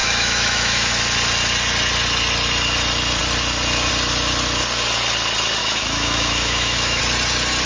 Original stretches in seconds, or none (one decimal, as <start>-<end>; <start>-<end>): 0.9-5.6; 7.0-7.7